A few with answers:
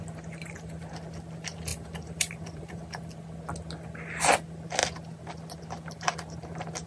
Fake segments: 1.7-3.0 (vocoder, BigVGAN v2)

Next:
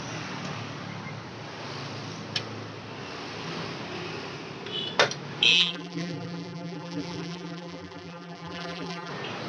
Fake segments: 5.5-9.1 (vocoder, BigVGAN v2)